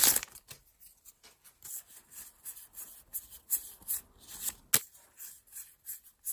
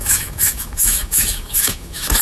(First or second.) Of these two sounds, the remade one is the second